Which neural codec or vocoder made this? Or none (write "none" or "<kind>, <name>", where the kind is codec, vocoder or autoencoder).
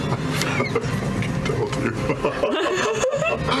none